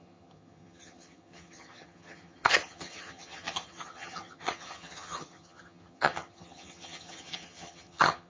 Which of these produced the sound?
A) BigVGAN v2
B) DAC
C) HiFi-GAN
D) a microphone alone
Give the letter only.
C